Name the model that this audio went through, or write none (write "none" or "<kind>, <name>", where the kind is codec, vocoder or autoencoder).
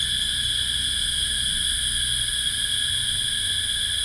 none